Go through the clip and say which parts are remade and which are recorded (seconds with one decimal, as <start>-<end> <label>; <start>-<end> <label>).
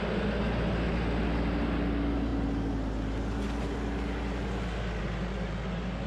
0.0-6.1 recorded